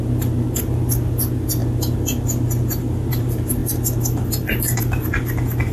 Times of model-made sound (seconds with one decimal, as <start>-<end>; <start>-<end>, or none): none